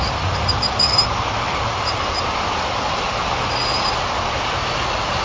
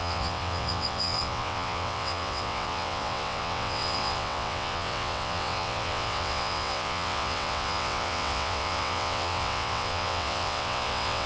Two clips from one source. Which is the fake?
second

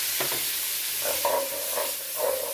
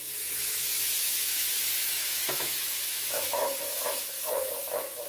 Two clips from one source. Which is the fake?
second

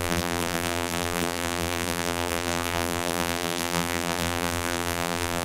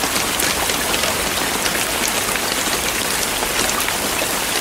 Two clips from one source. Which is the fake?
first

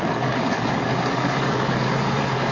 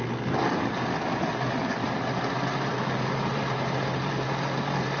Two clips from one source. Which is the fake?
first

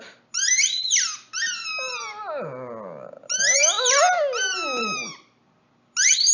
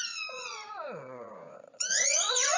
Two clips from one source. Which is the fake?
second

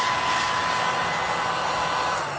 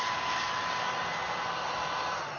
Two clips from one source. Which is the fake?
second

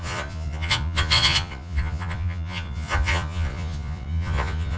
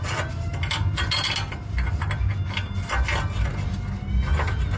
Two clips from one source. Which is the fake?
first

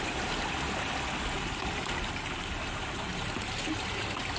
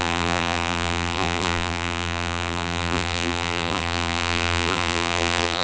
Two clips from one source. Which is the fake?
second